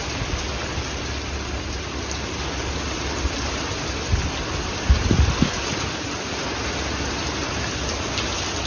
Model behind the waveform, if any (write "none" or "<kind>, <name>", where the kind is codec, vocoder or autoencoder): none